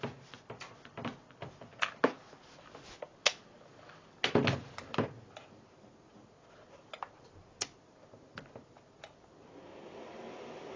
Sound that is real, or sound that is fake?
real